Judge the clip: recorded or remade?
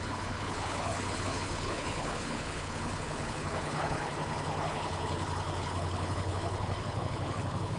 remade